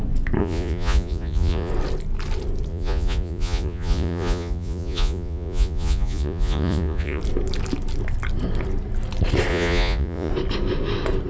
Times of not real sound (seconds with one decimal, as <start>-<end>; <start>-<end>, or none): 0.4-1.7; 2.7-7.2; 9.5-10.3